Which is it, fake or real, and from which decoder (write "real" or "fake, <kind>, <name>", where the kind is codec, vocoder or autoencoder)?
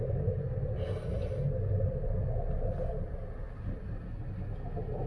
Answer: real